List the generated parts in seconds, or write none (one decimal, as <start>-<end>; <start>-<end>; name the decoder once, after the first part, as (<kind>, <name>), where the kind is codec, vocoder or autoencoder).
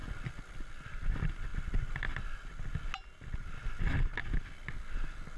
none